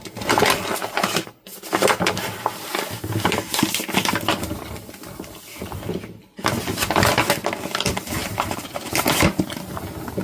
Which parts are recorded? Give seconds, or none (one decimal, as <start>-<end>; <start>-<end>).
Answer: 0.0-8.2; 9.4-10.2